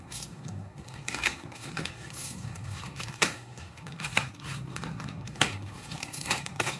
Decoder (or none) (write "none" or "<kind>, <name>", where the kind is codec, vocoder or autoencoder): codec, SNAC